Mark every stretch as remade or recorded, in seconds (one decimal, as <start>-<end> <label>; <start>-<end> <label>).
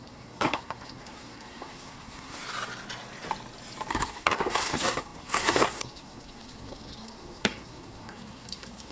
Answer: 0.0-2.4 remade; 2.4-3.9 recorded; 3.9-8.9 remade